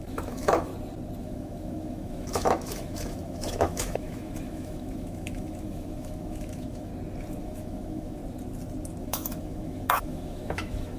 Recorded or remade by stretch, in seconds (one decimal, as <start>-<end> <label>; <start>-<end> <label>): 0.0-0.7 remade; 0.7-1.2 recorded; 1.2-6.9 remade; 6.9-7.4 recorded; 7.4-8.2 remade; 8.2-9.0 recorded; 9.0-11.0 remade